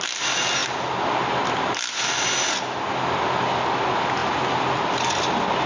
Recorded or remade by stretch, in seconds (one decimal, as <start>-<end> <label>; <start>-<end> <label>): 0.0-5.7 recorded